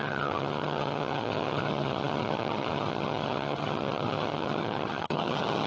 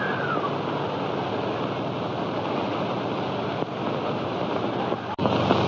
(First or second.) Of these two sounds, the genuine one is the second